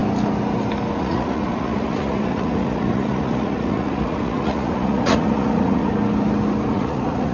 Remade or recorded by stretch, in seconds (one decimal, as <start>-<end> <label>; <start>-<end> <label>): 0.0-1.0 recorded; 1.0-5.9 remade; 5.9-6.7 recorded; 6.7-7.3 remade